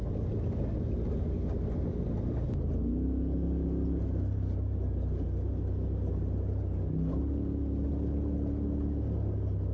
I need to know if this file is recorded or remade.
recorded